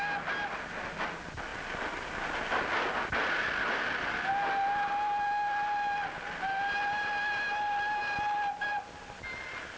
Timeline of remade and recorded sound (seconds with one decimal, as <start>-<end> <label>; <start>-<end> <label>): 0.0-9.8 recorded